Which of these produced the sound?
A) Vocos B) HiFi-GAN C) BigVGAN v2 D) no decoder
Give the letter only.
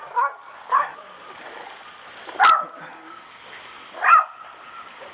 D